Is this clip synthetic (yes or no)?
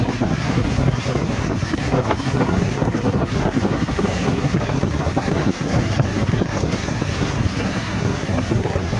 yes